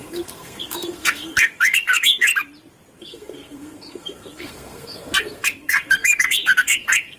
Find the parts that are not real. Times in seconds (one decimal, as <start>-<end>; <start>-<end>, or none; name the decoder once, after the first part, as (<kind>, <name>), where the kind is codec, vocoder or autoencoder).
0.0-2.3 (codec, SNAC); 3.0-7.2